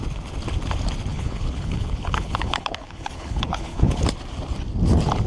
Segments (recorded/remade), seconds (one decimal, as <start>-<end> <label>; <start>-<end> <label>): 0.0-1.1 recorded; 1.1-4.0 remade; 4.0-5.3 recorded